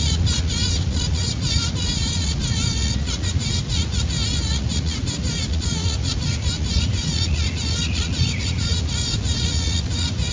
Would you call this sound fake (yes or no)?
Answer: yes